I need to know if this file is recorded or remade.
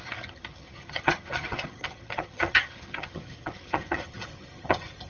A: remade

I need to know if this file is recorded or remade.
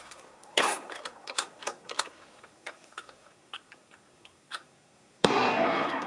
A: remade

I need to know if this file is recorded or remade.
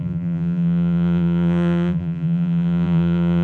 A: remade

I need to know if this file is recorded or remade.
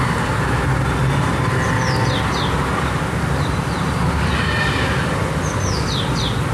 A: recorded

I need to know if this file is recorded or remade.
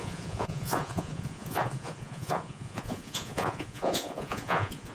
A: remade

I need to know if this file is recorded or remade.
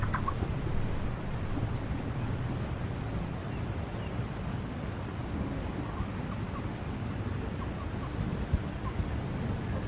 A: recorded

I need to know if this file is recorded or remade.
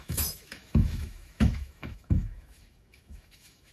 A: remade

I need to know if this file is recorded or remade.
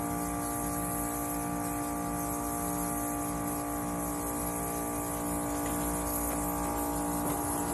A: recorded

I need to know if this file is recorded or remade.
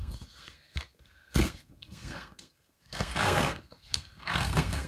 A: remade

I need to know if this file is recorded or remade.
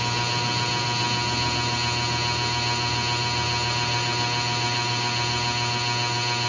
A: recorded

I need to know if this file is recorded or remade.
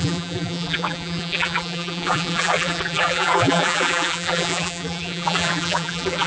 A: remade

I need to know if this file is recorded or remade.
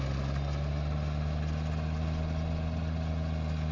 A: recorded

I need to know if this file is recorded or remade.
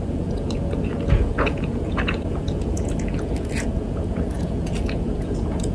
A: remade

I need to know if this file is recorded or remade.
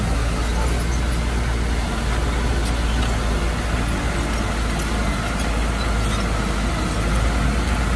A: recorded